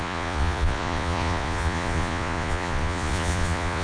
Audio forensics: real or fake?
fake